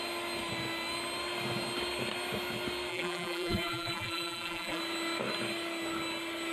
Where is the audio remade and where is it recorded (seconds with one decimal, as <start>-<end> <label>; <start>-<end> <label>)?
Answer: 0.0-2.9 recorded; 2.9-4.8 remade; 4.8-6.5 recorded